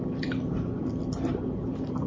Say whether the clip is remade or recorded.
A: recorded